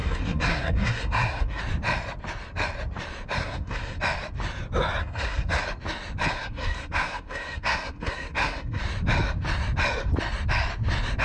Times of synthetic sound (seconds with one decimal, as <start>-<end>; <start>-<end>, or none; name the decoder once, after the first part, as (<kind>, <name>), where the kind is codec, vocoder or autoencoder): 0.0-1.6 (codec, SNAC); 3.4-4.0; 5.0-5.6; 6.3-8.8